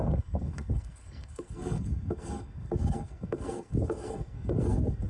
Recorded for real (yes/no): no